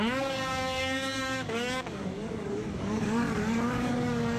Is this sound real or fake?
fake